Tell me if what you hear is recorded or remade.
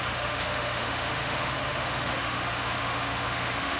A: remade